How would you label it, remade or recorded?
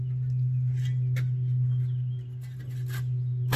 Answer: recorded